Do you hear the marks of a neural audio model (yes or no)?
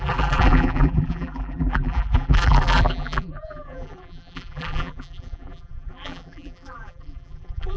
yes